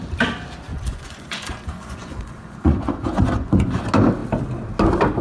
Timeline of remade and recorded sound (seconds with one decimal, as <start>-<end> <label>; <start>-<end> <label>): 0.0-0.7 recorded; 0.7-3.8 remade; 3.8-5.2 recorded